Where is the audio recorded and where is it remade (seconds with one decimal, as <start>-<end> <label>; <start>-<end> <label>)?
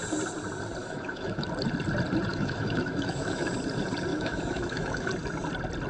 0.0-0.8 recorded; 0.8-1.5 remade; 1.5-2.3 recorded; 2.3-3.5 remade; 3.5-4.1 recorded; 4.1-5.1 remade; 5.1-5.9 recorded